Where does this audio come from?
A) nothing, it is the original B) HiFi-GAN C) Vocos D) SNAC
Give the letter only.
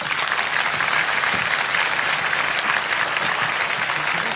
A